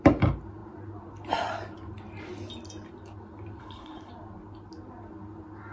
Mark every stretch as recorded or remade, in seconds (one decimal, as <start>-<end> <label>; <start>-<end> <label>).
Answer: 0.0-3.6 recorded; 3.6-4.1 remade; 4.1-5.7 recorded